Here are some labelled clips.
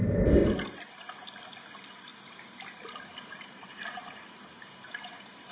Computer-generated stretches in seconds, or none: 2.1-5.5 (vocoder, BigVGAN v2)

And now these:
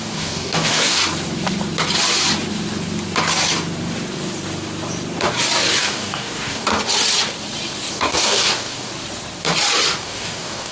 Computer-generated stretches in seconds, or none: 0.0-1.0 (codec, DAC); 5.8-6.7; 7.9-8.9; 10.0-10.7

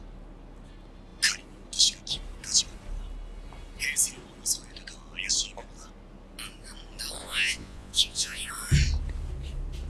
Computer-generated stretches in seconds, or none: 7.2-8.5 (vocoder, Vocos)